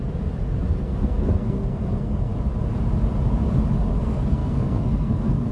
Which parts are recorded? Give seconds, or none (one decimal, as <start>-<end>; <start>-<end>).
0.0-0.8; 2.3-4.0